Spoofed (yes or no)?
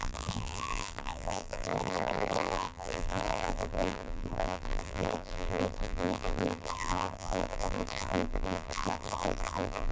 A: yes